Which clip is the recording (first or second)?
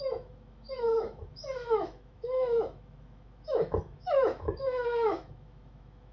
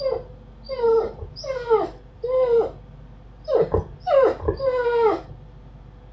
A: second